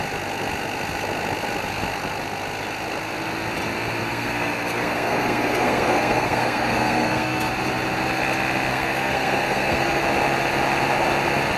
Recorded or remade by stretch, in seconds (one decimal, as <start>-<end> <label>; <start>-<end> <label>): 0.0-4.0 recorded; 4.0-7.5 remade; 7.5-8.7 recorded; 8.7-10.0 remade; 10.0-11.6 recorded

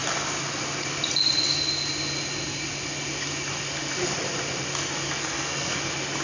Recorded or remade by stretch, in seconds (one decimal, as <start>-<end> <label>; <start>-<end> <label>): 0.0-5.2 recorded; 5.2-5.8 remade; 5.8-6.2 recorded

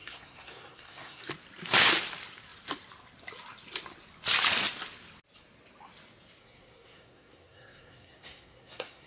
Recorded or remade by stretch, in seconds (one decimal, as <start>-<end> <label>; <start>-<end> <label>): 0.0-1.3 remade; 1.3-6.4 recorded; 6.4-9.1 remade

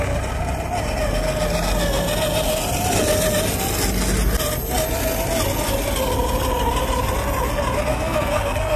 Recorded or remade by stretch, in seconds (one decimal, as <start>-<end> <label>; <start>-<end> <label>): 0.0-7.9 recorded; 7.9-8.8 remade